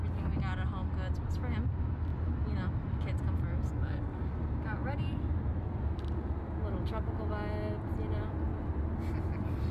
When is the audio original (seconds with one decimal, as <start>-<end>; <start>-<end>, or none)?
0.0-9.7